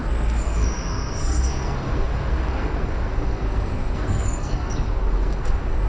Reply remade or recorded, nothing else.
remade